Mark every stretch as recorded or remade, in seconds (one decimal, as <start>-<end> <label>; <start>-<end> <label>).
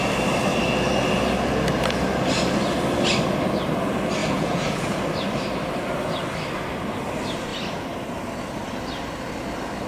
0.0-4.2 recorded; 4.2-5.0 remade; 5.0-9.9 recorded